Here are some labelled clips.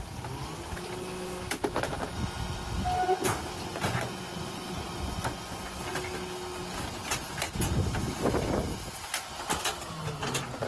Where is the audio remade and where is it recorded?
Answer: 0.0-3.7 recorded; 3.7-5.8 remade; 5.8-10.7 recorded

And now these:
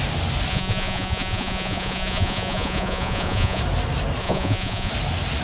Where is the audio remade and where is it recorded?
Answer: 0.0-0.5 recorded; 0.5-3.6 remade; 3.6-4.2 recorded; 4.2-4.9 remade; 4.9-5.4 recorded

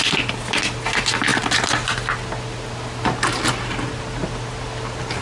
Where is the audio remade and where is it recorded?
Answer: 0.0-5.2 recorded